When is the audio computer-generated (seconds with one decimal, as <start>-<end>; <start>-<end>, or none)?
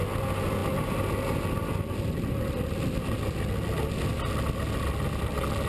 none